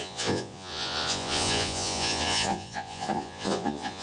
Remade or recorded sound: remade